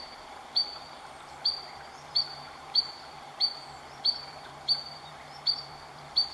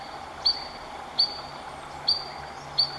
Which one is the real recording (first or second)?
second